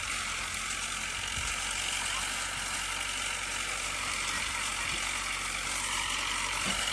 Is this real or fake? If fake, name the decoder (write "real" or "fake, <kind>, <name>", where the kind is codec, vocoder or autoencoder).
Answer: real